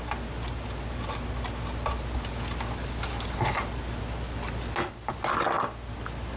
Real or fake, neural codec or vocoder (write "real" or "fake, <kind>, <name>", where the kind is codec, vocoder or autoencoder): real